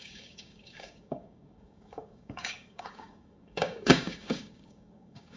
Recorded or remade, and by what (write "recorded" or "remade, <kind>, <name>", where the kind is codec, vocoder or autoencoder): remade, codec, DAC